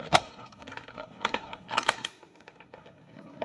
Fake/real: fake